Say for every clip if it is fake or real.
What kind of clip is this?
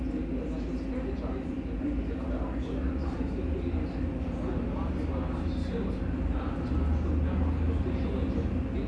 real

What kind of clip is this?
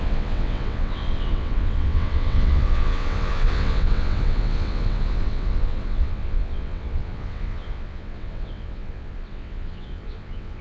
fake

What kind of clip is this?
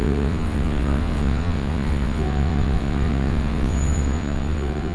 fake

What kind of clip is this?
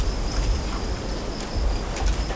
real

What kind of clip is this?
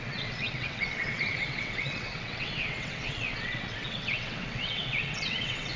fake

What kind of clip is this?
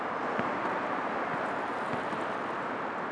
real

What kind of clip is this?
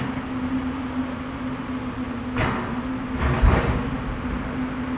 real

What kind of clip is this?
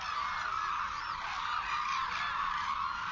real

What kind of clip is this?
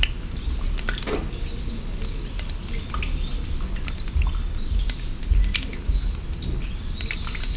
real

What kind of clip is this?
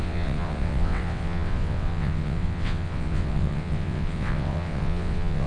fake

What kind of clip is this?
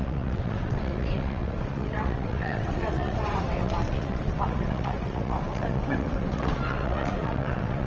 fake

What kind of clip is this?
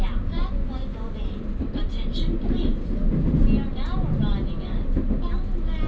real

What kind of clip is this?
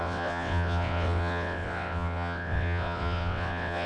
fake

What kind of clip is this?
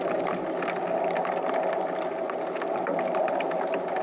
real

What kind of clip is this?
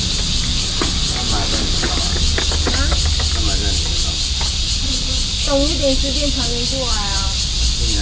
real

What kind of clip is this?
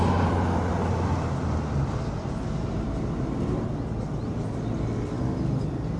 real